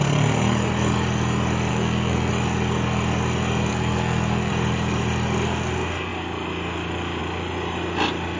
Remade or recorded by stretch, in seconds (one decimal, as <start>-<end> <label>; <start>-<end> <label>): 0.0-1.7 recorded; 1.7-2.3 remade; 2.3-3.7 recorded; 3.7-4.5 remade; 4.5-8.4 recorded